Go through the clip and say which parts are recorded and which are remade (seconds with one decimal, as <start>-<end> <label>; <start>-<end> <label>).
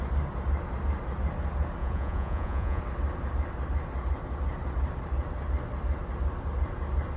0.0-1.8 recorded; 1.8-2.8 remade; 2.8-7.2 recorded